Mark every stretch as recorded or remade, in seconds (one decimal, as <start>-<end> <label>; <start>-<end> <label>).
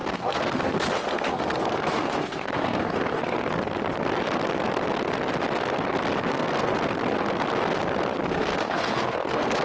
0.0-3.4 remade; 3.4-6.3 recorded; 6.3-6.7 remade; 6.7-8.3 recorded; 8.3-9.6 remade